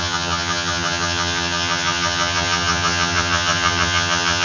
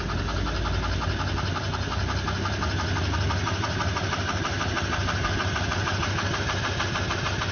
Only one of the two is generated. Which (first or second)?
first